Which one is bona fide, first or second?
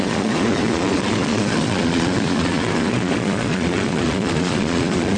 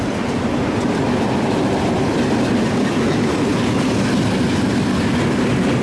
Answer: second